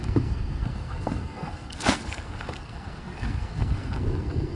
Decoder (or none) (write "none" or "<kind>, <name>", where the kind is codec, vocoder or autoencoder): codec, SNAC